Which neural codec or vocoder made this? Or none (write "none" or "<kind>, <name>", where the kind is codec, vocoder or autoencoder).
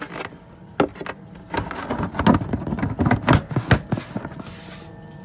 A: none